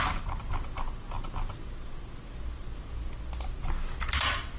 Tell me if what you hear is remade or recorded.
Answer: recorded